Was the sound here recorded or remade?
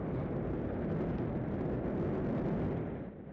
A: recorded